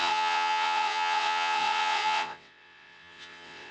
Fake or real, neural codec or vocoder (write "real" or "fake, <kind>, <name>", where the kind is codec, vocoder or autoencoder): fake, vocoder, WaveNeXt